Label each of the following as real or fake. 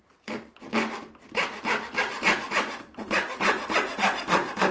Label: real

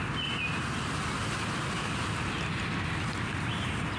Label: real